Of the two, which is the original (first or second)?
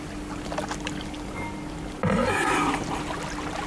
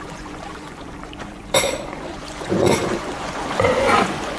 first